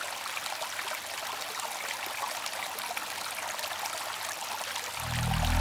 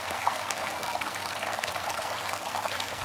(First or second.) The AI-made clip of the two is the second